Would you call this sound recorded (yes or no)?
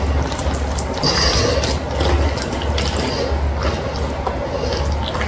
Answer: yes